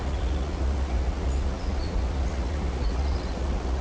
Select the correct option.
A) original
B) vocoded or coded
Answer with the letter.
B